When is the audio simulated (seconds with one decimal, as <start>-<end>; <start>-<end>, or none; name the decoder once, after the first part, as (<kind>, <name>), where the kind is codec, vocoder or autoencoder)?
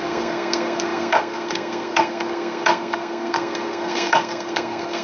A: 0.0-5.0 (codec, SNAC)